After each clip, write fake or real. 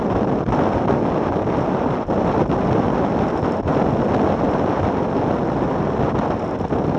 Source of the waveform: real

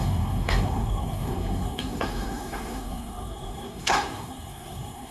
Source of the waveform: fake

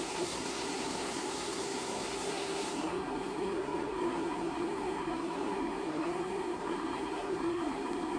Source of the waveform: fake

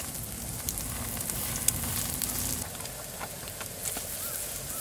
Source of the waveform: real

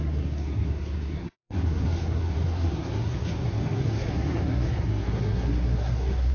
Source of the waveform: fake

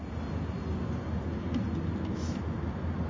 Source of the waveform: real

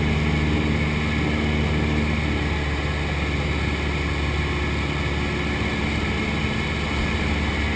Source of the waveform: real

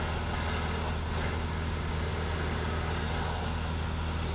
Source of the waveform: real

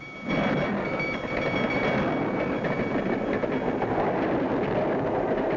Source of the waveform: real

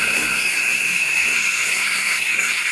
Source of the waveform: fake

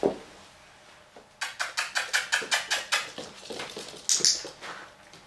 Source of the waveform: real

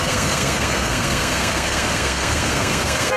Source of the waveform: fake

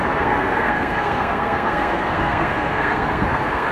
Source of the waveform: fake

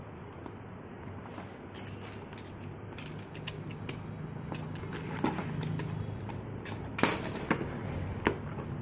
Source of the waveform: real